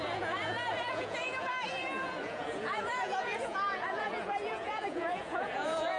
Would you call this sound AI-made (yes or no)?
yes